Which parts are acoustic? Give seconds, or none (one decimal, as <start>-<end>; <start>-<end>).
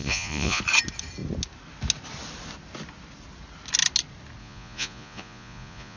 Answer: 0.6-4.4